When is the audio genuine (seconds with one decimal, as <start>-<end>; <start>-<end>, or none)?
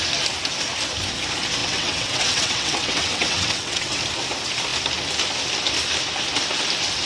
0.0-1.6; 4.0-7.1